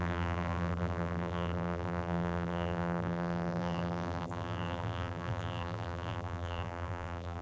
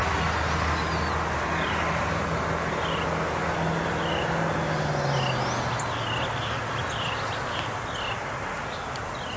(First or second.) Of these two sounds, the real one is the second